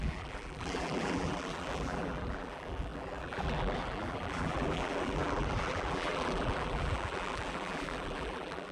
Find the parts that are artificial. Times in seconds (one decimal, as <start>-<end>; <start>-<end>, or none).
0.0-8.7